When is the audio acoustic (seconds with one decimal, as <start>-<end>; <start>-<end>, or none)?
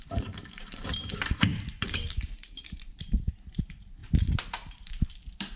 none